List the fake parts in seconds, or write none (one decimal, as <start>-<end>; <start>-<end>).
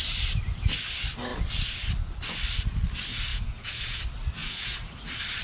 3.3-4.0; 4.4-4.9